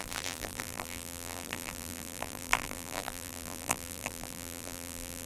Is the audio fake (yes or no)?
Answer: yes